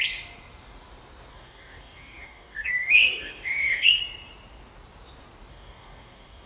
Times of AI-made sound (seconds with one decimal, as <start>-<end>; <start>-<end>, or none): 1.3-4.0; 5.5-6.5